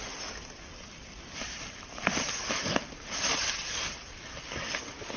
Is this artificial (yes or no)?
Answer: no